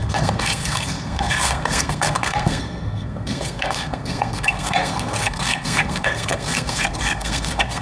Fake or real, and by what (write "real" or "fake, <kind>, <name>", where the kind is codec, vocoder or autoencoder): fake, codec, SNAC